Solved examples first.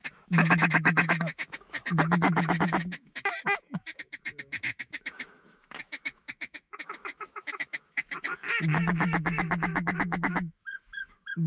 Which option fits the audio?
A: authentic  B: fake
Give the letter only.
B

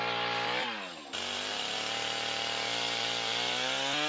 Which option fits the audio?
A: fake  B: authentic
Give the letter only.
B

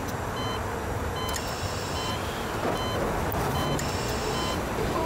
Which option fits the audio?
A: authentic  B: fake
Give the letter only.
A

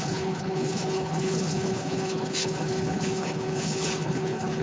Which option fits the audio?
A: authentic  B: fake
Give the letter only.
B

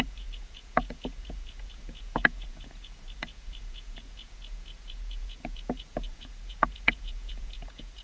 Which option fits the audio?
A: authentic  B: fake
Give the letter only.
B